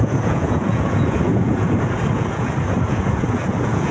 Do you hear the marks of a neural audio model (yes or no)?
yes